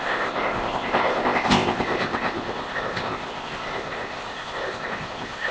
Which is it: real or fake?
fake